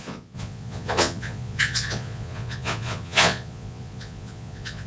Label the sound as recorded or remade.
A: remade